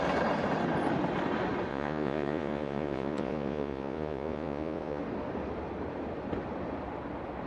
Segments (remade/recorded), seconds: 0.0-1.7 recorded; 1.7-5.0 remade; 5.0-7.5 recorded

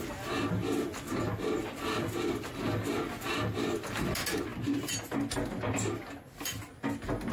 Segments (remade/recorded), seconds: 0.0-7.3 recorded

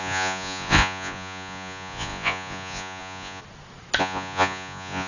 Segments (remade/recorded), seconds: 0.0-3.4 remade; 3.4-4.0 recorded; 4.0-5.1 remade

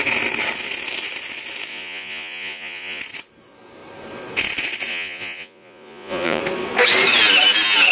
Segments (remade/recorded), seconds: 0.0-1.7 recorded; 1.7-3.0 remade; 3.0-4.9 recorded; 4.9-6.4 remade; 6.4-7.9 recorded

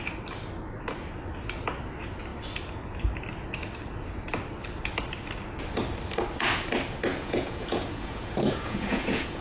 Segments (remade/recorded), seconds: 0.0-7.1 recorded; 7.1-9.4 remade

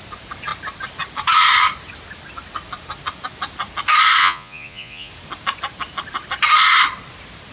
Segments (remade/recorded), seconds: 0.0-4.2 recorded; 4.2-5.1 remade; 5.1-7.5 recorded

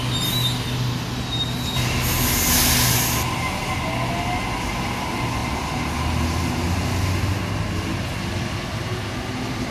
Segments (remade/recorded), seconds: 0.0-9.7 recorded